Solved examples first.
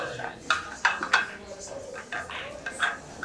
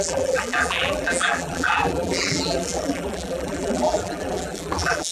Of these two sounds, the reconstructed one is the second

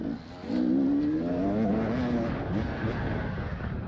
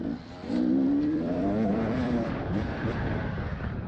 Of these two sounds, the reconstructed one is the second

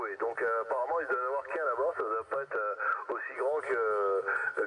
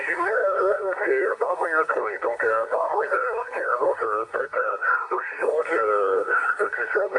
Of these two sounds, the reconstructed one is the second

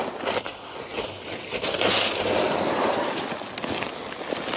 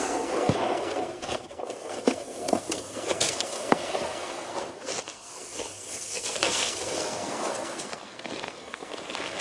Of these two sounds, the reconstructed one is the second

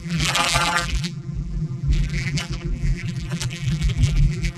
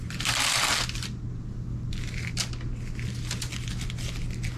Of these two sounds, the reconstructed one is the first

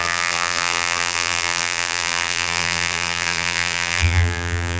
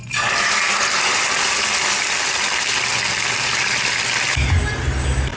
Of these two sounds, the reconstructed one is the first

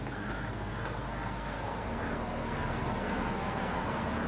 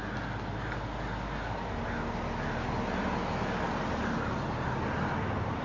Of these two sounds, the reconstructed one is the first